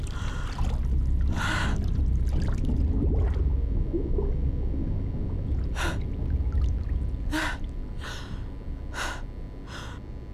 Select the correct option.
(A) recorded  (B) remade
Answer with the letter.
A